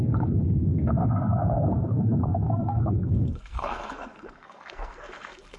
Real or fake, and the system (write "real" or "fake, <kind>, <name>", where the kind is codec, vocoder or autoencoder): fake, codec, SNAC